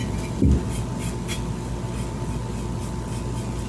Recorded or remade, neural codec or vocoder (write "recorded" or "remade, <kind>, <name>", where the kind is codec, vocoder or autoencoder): recorded